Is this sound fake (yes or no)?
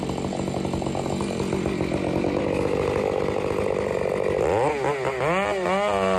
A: no